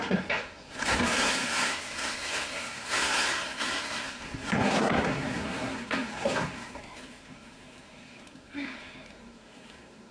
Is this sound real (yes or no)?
no